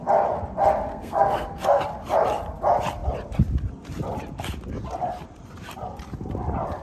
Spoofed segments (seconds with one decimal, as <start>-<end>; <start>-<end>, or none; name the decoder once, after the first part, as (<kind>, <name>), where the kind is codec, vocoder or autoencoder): 0.9-1.8 (codec, SNAC)